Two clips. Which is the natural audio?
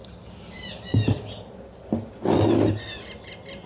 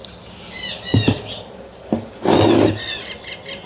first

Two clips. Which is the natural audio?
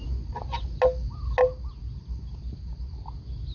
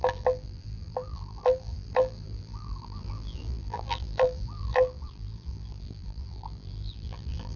first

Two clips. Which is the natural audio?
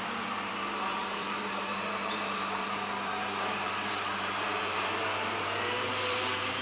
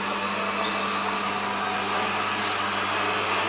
second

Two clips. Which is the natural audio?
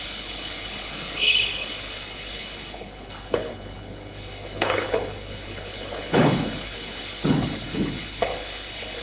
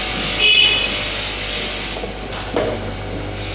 second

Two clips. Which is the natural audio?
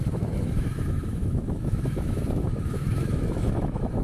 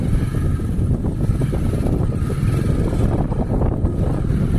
second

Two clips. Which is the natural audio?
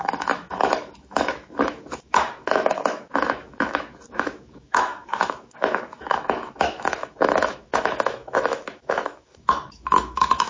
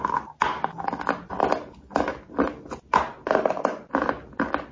second